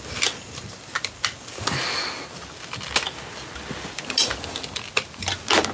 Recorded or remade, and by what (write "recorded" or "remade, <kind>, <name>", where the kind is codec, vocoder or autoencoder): recorded